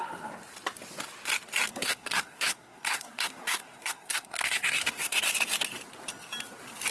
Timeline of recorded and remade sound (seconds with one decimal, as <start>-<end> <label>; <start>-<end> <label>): 0.0-1.7 recorded; 1.7-5.2 remade; 5.2-6.9 recorded